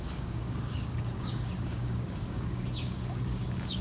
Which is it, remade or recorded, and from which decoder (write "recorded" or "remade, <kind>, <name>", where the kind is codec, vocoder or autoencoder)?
remade, codec, DAC